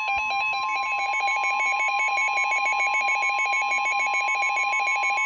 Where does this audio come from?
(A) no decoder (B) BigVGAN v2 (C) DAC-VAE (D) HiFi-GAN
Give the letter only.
A